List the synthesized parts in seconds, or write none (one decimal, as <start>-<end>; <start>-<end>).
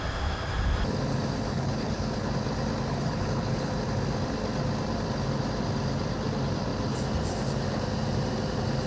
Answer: 1.5-2.3; 2.9-3.7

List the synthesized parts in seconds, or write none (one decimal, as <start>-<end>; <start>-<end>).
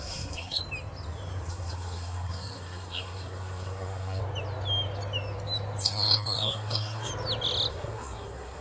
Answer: 0.0-0.6; 1.5-4.2; 5.8-7.1; 7.7-8.6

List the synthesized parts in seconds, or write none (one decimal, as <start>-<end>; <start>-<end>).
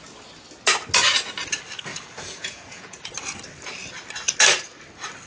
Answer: 1.9-3.1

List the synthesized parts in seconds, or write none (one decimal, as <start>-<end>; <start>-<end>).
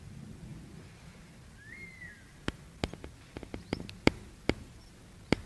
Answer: none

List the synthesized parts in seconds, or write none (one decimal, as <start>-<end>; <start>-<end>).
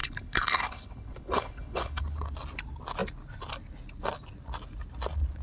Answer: 0.0-2.0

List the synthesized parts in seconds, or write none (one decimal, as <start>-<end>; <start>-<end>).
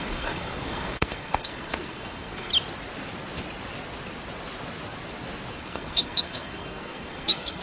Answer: 0.0-2.5; 5.5-7.6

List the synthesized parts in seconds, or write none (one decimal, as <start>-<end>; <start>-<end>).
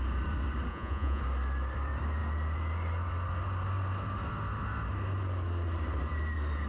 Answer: 0.7-1.2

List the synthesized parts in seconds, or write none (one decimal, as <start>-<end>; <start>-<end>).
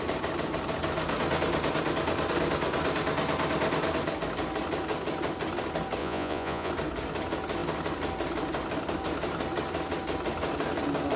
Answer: 6.0-6.7